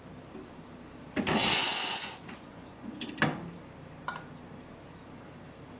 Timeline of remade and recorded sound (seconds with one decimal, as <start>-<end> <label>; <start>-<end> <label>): 0.0-1.6 recorded; 1.6-3.1 remade; 3.1-5.8 recorded